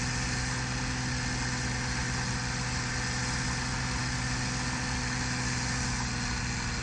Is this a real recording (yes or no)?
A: yes